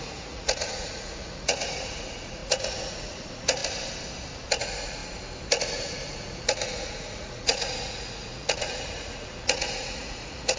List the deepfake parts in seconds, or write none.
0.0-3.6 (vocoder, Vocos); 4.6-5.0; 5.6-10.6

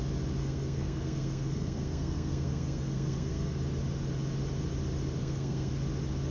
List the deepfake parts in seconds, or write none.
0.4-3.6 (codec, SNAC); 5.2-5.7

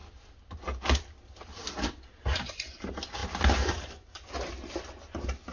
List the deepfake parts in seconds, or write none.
none

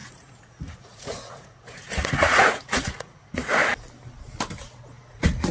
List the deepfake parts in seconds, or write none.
0.0-3.6 (vocoder, Vocos); 5.1-5.5

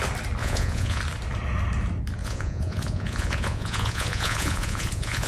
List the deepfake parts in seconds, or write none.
0.4-1.0 (vocoder, Vocos); 2.2-5.3

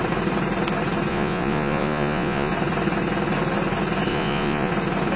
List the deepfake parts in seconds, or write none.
1.1-2.5 (vocoder, Vocos); 4.1-4.7

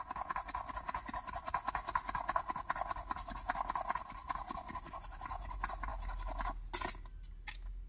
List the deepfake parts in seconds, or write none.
none